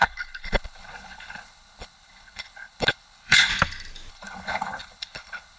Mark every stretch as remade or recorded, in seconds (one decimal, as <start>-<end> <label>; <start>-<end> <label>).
0.0-3.5 remade; 3.5-4.1 recorded; 4.1-5.6 remade